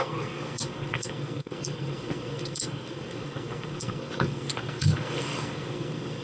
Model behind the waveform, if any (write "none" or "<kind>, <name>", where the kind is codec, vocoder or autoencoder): codec, SNAC